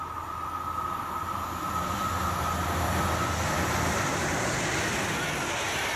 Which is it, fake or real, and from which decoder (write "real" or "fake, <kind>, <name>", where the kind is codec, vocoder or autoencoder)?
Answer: real